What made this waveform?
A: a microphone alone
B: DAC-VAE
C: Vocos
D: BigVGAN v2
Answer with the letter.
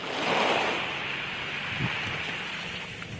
A